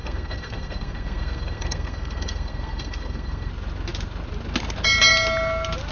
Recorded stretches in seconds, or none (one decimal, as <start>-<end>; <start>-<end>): 3.5-5.9